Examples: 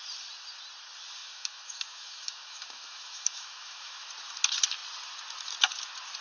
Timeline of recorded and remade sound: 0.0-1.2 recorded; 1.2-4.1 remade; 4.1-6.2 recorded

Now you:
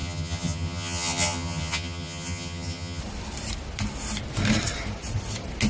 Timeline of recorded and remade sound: 0.0-3.0 remade; 3.0-5.7 recorded

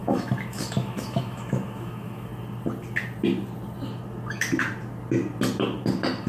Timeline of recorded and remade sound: 0.0-2.3 remade; 2.3-6.3 recorded

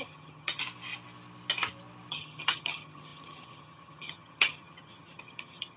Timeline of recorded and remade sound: 0.0-0.6 remade; 0.6-2.1 recorded; 2.1-5.8 remade

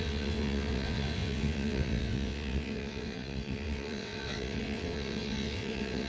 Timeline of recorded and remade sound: 0.0-6.1 remade

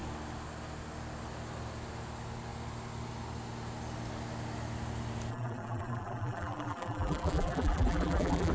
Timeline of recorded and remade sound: 0.0-5.3 recorded; 5.3-8.5 remade

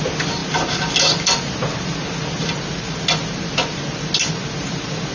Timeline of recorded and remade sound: 0.0-5.1 recorded

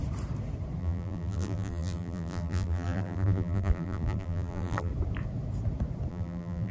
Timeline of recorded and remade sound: 0.0-0.8 recorded; 0.8-4.9 remade; 4.9-6.1 recorded; 6.1-6.7 remade